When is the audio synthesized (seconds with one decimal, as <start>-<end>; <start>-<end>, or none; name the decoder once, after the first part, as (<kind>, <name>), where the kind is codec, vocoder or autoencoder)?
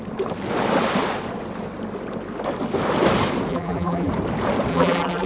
3.5-4.1 (vocoder, BigVGAN v2); 4.7-5.3